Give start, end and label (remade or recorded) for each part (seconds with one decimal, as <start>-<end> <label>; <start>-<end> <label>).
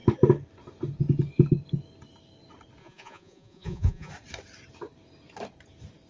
0.0-2.8 recorded; 2.8-4.1 remade; 4.1-6.1 recorded